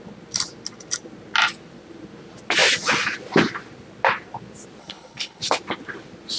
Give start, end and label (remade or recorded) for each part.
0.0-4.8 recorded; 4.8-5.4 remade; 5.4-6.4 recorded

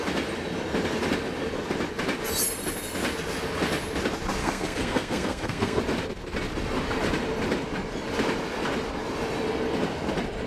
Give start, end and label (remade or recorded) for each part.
0.0-4.4 recorded; 4.4-5.8 remade; 5.8-10.5 recorded

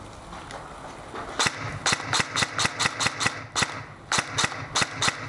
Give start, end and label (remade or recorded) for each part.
0.0-5.3 recorded

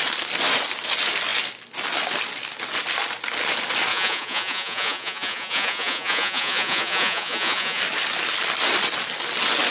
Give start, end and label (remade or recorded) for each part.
0.0-3.9 recorded; 3.9-7.8 remade; 7.8-9.7 recorded

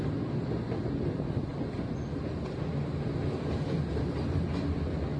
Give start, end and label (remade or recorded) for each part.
0.0-5.2 recorded

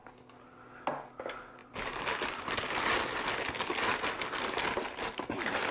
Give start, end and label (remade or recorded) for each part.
0.0-5.7 recorded

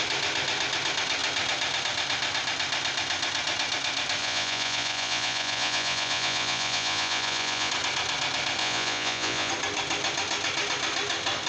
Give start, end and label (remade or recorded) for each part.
0.0-4.2 recorded; 4.2-7.7 remade; 7.7-8.6 recorded; 8.6-9.5 remade; 9.5-11.5 recorded